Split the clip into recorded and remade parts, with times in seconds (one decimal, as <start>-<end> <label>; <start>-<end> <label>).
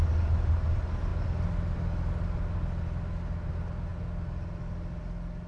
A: 0.0-5.5 recorded